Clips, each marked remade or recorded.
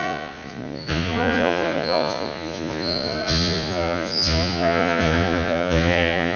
remade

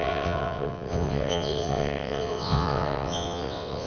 remade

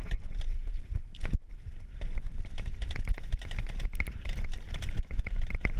recorded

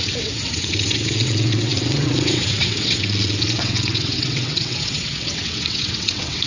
remade